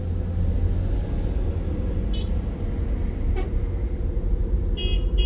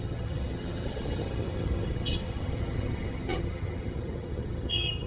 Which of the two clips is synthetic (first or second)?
second